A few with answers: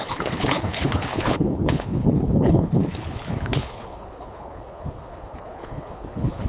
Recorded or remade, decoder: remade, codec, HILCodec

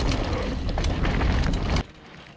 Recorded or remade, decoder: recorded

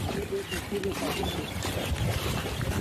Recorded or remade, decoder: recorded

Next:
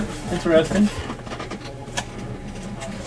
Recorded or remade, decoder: recorded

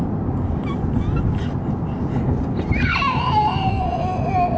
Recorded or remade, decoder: recorded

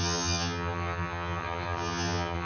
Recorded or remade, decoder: remade, vocoder, HiFi-GAN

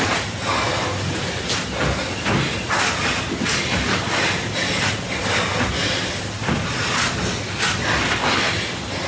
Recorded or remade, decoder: recorded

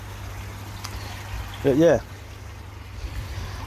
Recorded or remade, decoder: recorded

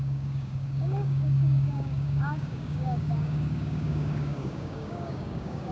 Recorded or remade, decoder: remade, codec, DAC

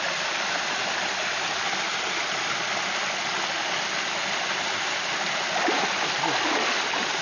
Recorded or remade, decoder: recorded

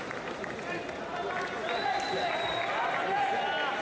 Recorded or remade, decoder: recorded